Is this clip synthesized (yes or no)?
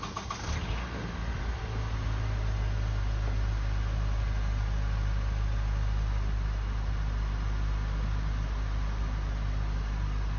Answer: no